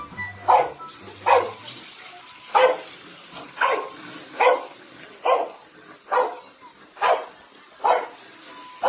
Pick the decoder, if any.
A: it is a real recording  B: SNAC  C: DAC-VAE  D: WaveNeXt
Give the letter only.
A